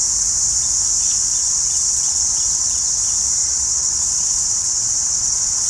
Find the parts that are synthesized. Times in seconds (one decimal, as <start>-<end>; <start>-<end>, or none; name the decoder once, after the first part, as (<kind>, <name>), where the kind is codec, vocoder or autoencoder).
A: 1.4-3.0 (vocoder, WaveNeXt); 3.4-5.7